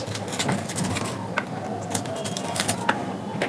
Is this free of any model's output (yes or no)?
yes